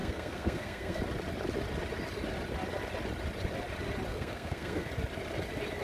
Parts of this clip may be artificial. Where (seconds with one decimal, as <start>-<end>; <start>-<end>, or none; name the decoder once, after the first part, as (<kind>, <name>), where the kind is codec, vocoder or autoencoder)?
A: 0.0-1.0 (codec, SNAC); 4.1-4.9